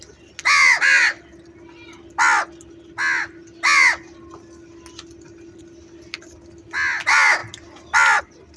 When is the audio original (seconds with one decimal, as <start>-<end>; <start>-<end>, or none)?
0.0-8.6